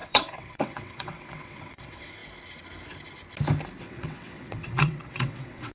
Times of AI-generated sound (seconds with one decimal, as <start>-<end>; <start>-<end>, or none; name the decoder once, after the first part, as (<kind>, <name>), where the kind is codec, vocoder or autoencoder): 0.0-2.2 (vocoder, WaveNeXt); 3.8-5.7